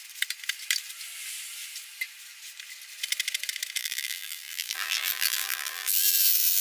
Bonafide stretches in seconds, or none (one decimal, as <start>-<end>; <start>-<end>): 0.0-3.8